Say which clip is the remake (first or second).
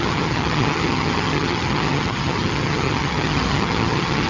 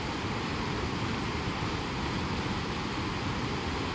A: first